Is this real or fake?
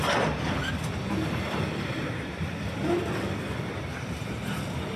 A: real